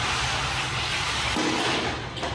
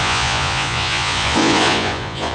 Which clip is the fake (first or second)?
second